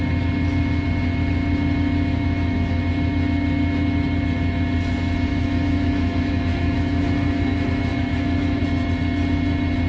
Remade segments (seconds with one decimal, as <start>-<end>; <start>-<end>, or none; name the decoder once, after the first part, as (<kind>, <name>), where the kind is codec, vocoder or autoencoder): 2.1-2.8 (autoencoder, DAC-VAE); 5.3-8.6